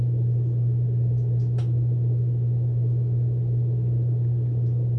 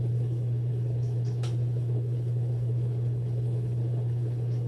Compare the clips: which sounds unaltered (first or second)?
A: first